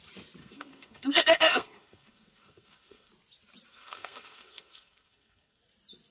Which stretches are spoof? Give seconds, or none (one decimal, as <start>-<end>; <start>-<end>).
0.4-3.1; 3.7-5.6

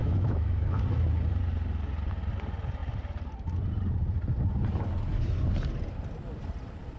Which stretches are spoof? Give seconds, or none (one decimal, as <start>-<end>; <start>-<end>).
0.0-0.8